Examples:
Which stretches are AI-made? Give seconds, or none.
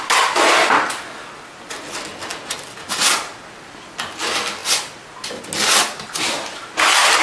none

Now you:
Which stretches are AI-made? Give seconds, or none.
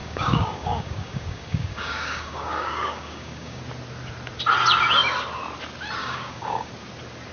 0.0-3.6 (codec, DAC); 6.0-6.7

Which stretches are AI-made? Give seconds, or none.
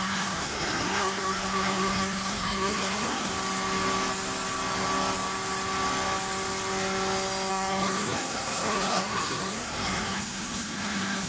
0.0-3.3 (codec, SNAC); 7.5-11.3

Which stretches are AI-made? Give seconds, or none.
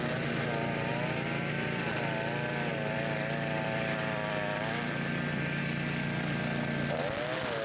2.7-5.6 (vocoder, BigVGAN v2)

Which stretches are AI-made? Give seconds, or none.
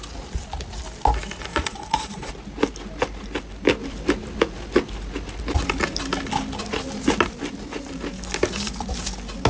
1.5-2.3 (vocoder, Vocos)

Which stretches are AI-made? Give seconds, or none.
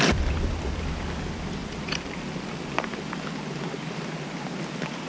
none